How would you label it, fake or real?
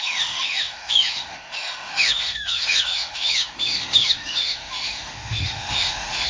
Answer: fake